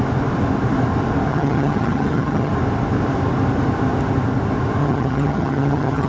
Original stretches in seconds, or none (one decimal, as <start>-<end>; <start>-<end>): 0.0-1.3; 2.5-4.8